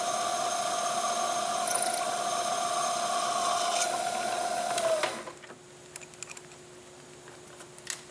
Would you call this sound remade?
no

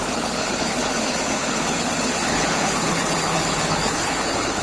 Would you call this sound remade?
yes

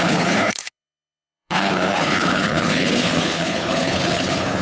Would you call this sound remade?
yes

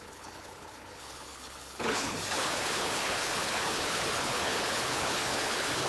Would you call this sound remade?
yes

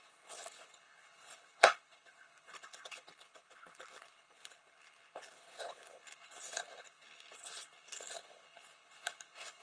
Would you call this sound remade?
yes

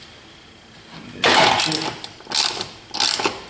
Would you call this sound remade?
no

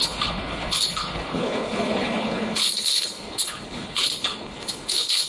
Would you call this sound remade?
yes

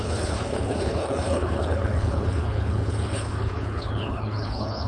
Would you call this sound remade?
yes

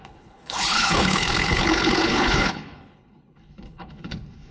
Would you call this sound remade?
yes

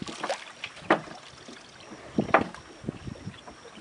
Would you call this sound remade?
no